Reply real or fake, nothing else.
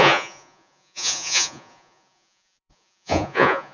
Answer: fake